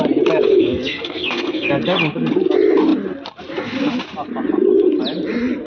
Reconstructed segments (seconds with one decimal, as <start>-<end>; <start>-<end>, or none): 0.5-1.7